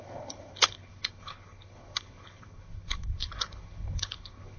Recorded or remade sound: remade